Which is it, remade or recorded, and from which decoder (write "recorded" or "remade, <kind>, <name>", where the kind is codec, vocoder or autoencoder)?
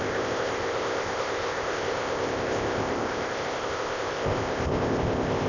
remade, codec, ZipCodec